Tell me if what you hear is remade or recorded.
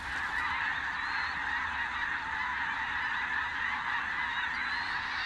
recorded